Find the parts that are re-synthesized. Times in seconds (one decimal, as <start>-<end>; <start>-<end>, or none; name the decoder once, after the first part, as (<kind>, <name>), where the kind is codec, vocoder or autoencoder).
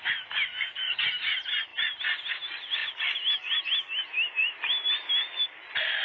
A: 2.8-3.6 (vocoder, BigVGAN v2); 4.4-5.1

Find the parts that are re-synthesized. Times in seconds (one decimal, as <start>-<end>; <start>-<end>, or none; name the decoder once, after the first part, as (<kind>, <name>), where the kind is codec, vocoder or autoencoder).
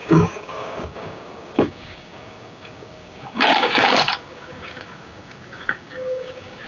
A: 0.0-6.7 (codec, DAC)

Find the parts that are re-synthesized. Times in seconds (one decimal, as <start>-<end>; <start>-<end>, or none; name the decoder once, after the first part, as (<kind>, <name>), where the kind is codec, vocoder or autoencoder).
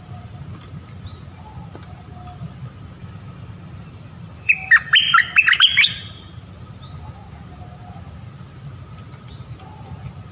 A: 3.0-5.2 (vocoder, BigVGAN v2)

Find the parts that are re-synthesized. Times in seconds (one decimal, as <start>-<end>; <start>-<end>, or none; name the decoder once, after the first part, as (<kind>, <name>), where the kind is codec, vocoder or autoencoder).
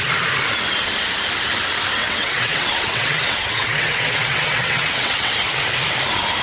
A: 2.0-5.3 (vocoder, WaveNeXt)